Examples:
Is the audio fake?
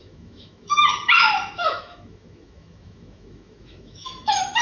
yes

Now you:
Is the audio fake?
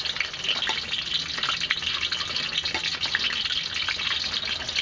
no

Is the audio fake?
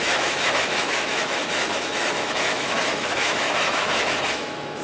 yes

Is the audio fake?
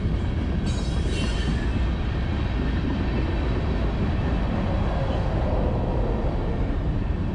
no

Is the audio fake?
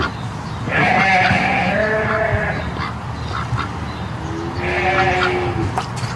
no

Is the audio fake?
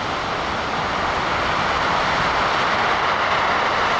no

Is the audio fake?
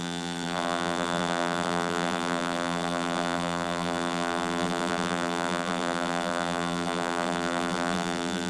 yes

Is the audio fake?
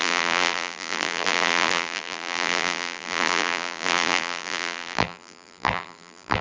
yes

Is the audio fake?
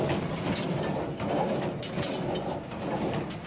no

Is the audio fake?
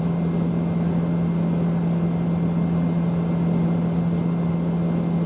no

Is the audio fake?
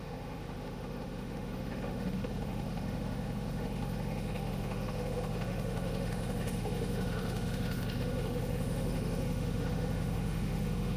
yes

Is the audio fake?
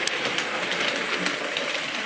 no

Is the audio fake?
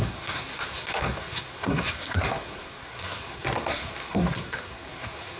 yes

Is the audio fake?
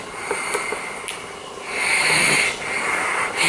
no